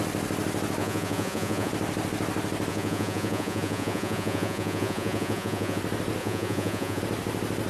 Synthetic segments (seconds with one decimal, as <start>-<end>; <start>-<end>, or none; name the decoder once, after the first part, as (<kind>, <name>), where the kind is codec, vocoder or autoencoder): 0.8-1.7 (vocoder, Vocos); 2.7-5.8; 6.2-7.0